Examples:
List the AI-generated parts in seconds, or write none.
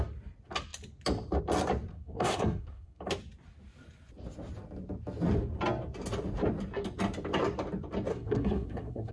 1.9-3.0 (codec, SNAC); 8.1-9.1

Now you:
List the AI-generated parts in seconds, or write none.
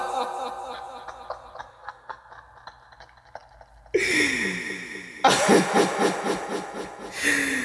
1.7-2.3 (codec, SNAC)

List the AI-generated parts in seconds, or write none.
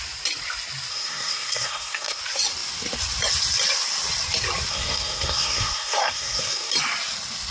0.9-2.2 (codec, SNAC); 4.7-6.7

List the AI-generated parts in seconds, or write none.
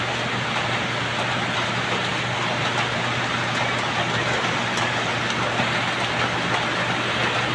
none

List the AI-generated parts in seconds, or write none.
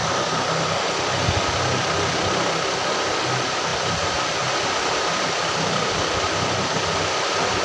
none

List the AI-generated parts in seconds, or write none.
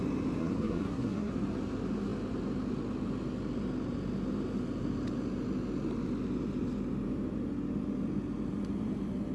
0.4-1.3 (codec, SNAC)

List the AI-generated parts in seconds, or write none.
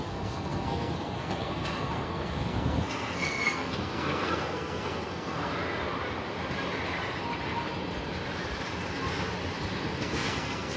0.0-5.5 (codec, SNAC); 10.0-10.8